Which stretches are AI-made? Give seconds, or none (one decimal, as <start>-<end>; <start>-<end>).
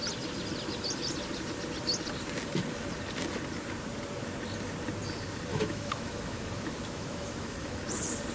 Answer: 5.5-7.8